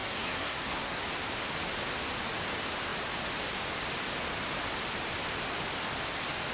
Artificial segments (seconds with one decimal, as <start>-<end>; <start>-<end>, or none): 0.0-1.0